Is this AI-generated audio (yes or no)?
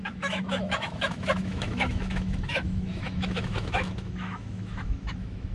yes